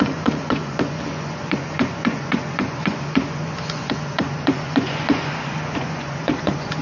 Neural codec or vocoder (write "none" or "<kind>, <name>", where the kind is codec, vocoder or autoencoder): vocoder, Vocos